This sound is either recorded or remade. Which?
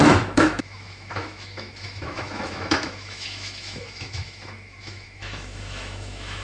remade